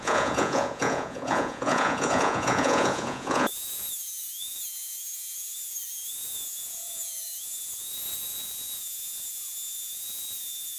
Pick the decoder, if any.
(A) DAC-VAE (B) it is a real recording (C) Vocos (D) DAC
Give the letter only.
C